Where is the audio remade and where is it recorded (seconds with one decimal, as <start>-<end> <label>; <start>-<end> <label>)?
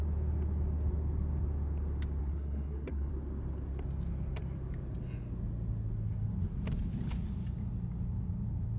0.0-2.2 recorded; 2.2-3.1 remade; 3.1-8.8 recorded